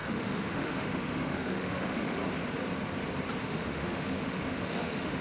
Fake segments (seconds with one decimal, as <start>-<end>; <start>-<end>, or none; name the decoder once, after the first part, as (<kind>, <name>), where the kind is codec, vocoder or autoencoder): 0.0-2.2 (autoencoder, DAC-VAE); 3.4-5.2